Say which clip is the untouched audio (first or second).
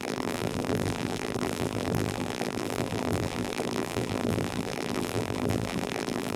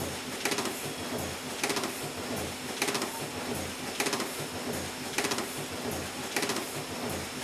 second